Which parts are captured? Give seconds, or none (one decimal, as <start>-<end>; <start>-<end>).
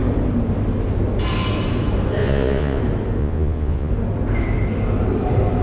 0.0-2.2; 2.8-3.2; 3.9-5.6